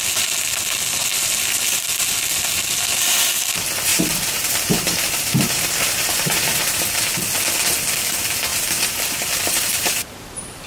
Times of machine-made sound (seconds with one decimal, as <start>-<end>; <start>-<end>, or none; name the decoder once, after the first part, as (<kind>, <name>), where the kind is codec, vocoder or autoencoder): 3.9-6.8 (vocoder, BigVGAN v2); 8.5-10.7